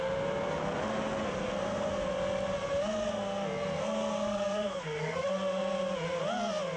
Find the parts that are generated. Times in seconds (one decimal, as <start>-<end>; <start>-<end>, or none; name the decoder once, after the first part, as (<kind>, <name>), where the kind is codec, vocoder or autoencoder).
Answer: 1.4-2.1 (codec, SNAC); 2.8-5.3